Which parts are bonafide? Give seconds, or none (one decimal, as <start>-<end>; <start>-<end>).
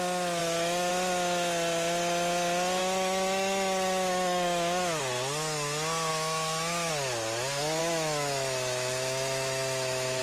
0.0-0.4; 0.9-2.8; 5.0-6.1; 6.9-7.8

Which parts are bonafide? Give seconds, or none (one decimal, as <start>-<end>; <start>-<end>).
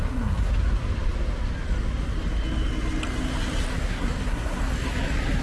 0.5-3.8; 4.6-5.4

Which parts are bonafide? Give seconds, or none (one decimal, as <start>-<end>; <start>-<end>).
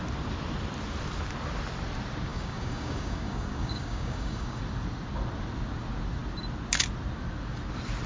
0.0-2.3; 4.6-8.1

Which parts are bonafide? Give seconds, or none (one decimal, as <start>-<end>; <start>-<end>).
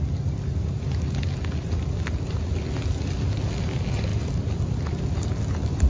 0.0-5.9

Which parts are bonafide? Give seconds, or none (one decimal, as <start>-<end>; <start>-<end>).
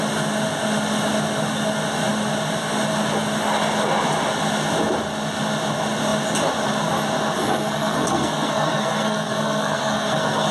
0.0-7.4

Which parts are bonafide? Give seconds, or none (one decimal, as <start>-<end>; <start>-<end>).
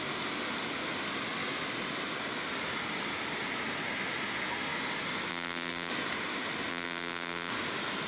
0.0-5.3; 5.9-6.7; 7.5-8.1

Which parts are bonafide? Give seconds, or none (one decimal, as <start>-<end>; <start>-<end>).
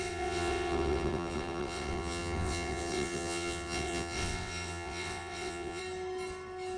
5.8-6.8